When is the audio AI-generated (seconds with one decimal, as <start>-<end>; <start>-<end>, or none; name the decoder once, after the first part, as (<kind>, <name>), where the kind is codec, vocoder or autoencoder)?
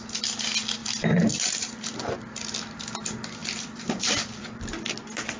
0.8-2.1 (vocoder, BigVGAN v2); 3.4-4.9